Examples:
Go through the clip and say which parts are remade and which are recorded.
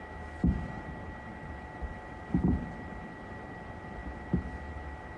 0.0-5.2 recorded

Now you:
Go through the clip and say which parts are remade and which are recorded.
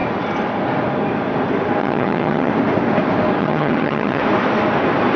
0.0-1.8 recorded; 1.8-2.5 remade; 2.5-3.4 recorded; 3.4-4.2 remade; 4.2-5.2 recorded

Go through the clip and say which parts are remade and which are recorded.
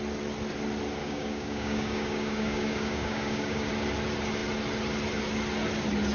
0.0-1.0 recorded; 1.0-3.7 remade; 3.7-6.1 recorded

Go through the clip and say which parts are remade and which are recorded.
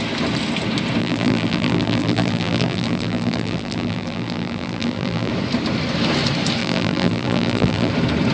0.0-1.0 recorded; 1.0-5.3 remade; 5.3-6.6 recorded; 6.6-7.9 remade; 7.9-8.3 recorded